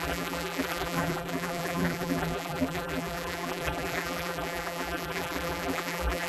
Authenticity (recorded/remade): remade